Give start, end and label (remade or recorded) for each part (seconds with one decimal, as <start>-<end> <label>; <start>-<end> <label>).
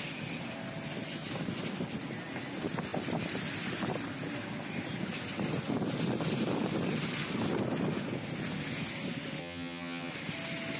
0.0-9.4 recorded; 9.4-10.1 remade; 10.1-10.8 recorded